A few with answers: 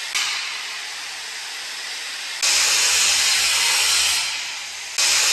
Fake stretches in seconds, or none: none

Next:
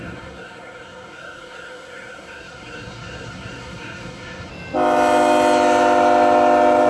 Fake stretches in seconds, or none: 0.0-4.5 (codec, SNAC)

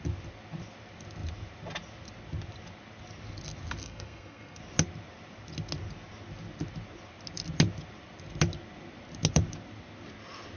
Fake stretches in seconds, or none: 3.8-4.6 (codec, SNAC)

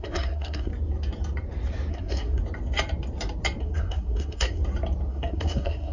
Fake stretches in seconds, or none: 0.0-0.7 (codec, SNAC); 1.9-2.4; 3.6-4.6; 5.1-5.9

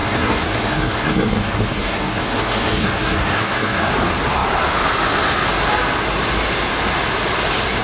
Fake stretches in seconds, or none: 0.0-3.9 (codec, SNAC)